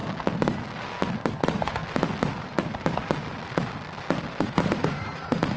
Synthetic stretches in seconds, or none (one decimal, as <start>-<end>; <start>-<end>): 1.4-1.8; 4.4-5.6